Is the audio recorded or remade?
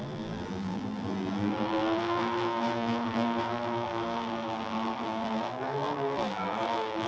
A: remade